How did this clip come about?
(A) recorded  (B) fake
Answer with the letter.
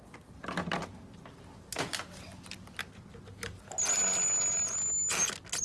A